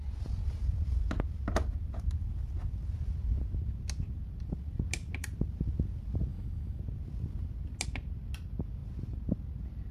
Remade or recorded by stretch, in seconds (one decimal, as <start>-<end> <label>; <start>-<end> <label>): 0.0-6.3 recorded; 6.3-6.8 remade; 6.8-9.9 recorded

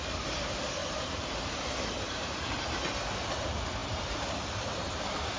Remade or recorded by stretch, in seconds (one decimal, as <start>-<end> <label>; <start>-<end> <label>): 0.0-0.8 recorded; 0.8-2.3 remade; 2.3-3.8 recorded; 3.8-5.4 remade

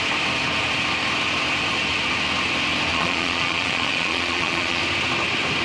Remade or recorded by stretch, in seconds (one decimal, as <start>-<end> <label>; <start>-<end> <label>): 0.0-2.9 recorded; 2.9-4.8 remade; 4.8-5.6 recorded

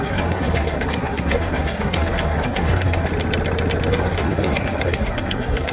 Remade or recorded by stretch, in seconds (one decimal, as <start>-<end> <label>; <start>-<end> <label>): 0.0-3.1 remade; 3.1-3.9 recorded; 3.9-5.7 remade

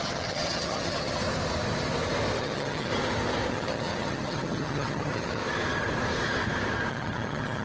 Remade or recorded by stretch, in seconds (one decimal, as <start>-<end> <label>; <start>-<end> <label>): 0.0-1.2 remade; 1.2-2.4 recorded; 2.4-2.9 remade; 2.9-3.5 recorded; 3.5-5.4 remade; 5.4-6.9 recorded; 6.9-7.6 remade

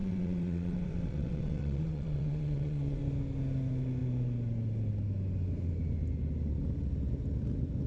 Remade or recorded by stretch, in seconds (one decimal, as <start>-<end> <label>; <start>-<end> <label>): 0.0-3.0 remade; 3.0-7.9 recorded

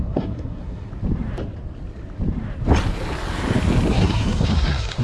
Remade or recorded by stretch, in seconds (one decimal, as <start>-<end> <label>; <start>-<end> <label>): 0.0-0.9 remade; 0.9-3.9 recorded; 3.9-5.0 remade